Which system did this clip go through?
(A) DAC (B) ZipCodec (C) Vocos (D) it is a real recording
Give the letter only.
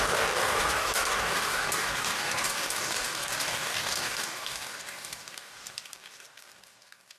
A